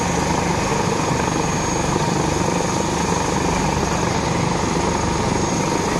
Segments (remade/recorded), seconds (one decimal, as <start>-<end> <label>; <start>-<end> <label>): 0.0-6.0 recorded